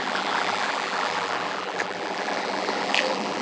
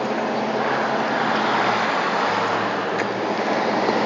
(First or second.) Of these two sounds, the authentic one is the second